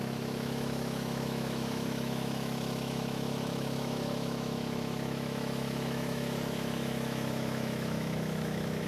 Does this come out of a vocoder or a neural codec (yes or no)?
yes